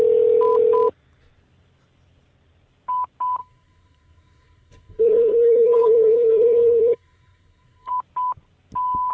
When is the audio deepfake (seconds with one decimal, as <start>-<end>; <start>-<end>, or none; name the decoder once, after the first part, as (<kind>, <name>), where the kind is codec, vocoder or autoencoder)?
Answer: 3.4-7.9 (codec, SNAC)